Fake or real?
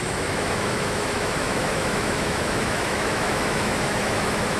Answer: fake